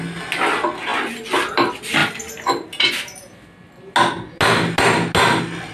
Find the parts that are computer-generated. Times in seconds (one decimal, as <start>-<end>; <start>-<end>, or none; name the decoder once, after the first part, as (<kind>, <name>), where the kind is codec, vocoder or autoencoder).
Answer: none